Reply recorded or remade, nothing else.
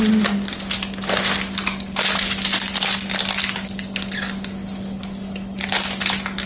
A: recorded